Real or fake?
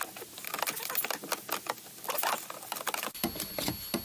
real